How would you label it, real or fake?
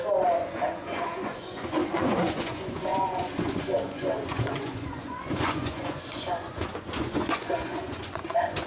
fake